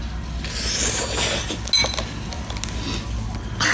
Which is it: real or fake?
real